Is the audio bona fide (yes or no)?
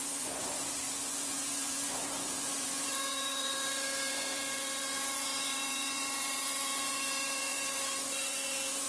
no